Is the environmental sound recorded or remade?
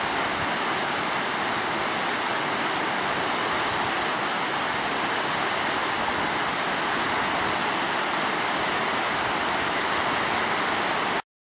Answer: recorded